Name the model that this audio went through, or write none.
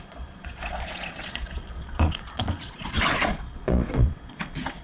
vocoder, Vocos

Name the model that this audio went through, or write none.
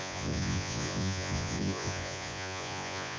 vocoder, Vocos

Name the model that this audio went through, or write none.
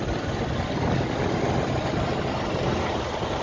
none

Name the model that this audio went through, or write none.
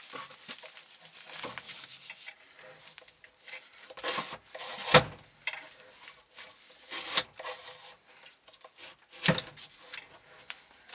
none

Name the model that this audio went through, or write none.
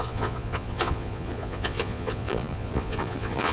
vocoder, Vocos